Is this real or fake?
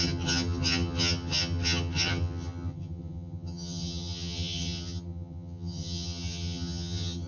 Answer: fake